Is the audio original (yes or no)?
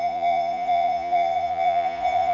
no